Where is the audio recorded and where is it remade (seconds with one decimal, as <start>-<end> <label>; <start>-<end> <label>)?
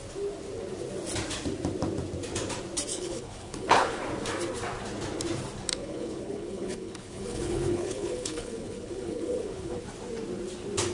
0.0-2.9 recorded; 2.9-4.0 remade; 4.0-5.7 recorded; 5.7-9.8 remade; 9.8-10.9 recorded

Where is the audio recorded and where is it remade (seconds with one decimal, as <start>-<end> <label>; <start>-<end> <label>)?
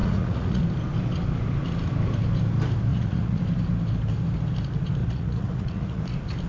0.0-0.6 remade; 0.6-2.9 recorded; 2.9-3.4 remade; 3.4-5.0 recorded; 5.0-6.0 remade; 6.0-6.5 recorded